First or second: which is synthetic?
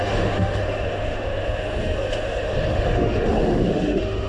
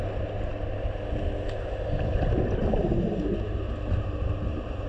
first